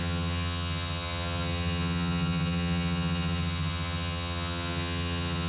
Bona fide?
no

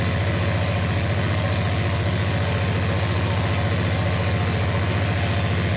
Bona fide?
yes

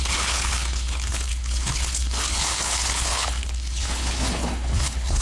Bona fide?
no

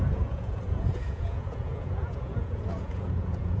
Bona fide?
no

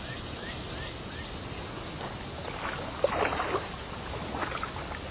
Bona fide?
yes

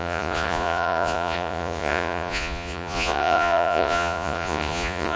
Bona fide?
no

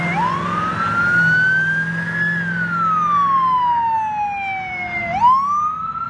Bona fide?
yes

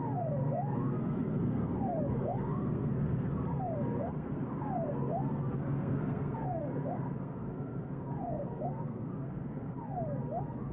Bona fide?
no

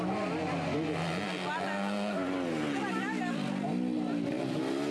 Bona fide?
yes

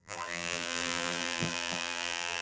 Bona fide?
no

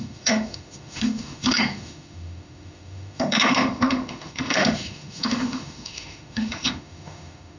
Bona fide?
no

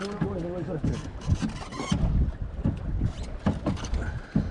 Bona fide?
yes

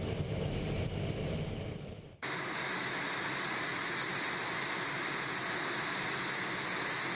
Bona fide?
yes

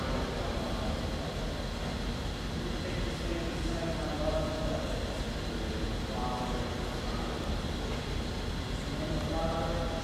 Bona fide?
yes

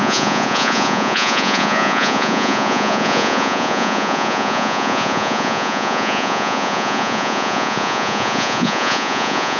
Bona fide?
no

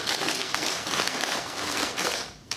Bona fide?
no